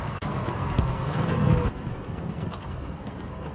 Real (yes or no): no